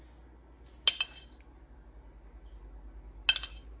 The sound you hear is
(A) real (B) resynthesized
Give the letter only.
A